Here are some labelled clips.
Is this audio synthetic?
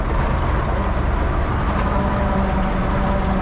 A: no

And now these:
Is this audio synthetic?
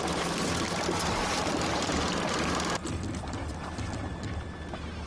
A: no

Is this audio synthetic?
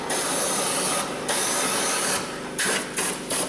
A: no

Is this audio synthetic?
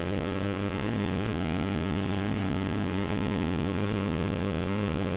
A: yes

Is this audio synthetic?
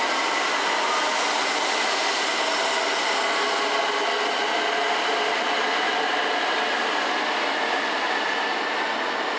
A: no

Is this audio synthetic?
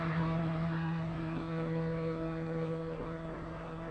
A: yes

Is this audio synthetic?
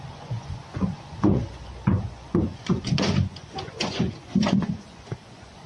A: yes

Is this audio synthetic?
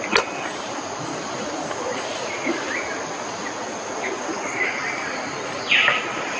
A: no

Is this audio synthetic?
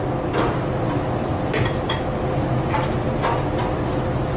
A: no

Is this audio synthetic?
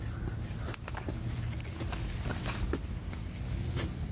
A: no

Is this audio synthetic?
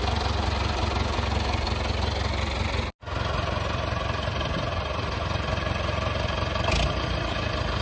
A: no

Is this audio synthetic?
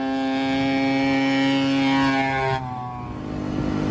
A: no